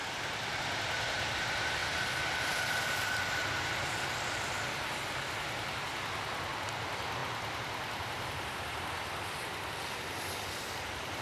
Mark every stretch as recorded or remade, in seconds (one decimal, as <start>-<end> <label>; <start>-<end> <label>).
0.0-11.2 recorded